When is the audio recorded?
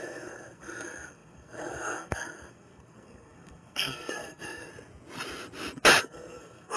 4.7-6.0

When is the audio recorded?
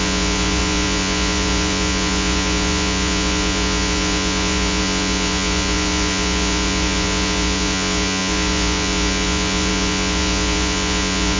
none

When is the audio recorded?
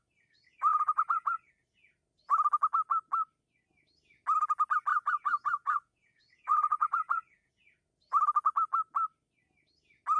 0.0-0.7; 1.5-4.9; 7.5-10.2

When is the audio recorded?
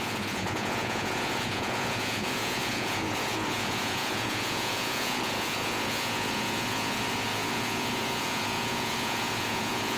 none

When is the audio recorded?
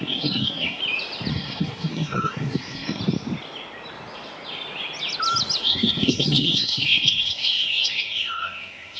0.8-1.3; 3.0-5.6